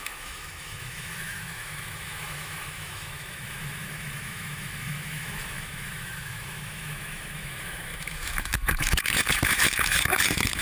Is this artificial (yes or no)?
yes